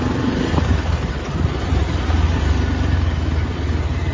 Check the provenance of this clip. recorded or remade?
recorded